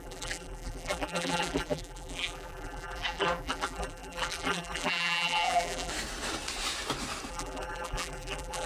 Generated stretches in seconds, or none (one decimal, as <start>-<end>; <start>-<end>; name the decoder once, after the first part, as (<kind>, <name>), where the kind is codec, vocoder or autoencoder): 0.0-5.9 (vocoder, BigVGAN v2); 7.3-8.7